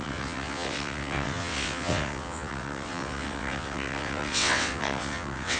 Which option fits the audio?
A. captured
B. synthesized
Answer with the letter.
B